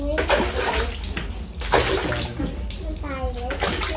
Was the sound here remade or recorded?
recorded